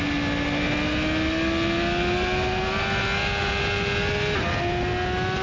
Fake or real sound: real